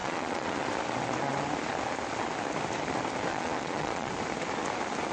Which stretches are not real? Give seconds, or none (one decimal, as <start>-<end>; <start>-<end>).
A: 0.0-0.6; 3.3-4.1